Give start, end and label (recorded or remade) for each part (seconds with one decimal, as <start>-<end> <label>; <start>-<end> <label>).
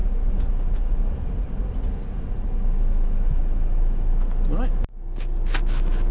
0.0-6.1 recorded